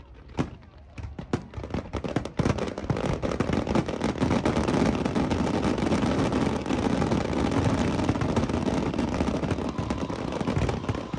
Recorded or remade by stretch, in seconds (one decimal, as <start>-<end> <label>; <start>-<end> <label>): 0.0-11.2 recorded